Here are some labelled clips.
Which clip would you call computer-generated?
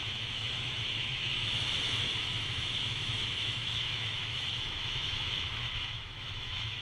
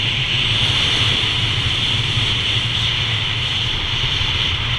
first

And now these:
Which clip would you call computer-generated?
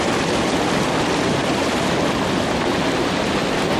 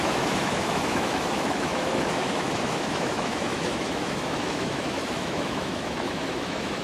second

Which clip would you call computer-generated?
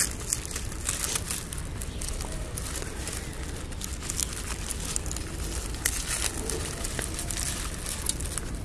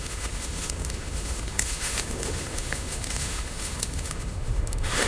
second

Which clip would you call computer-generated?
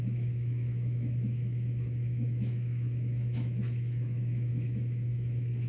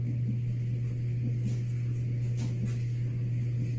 first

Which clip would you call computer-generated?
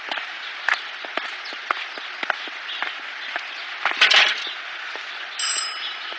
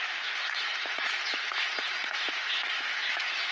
second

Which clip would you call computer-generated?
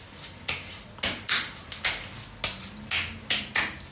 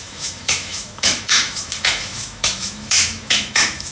second